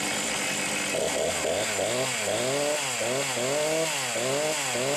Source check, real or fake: real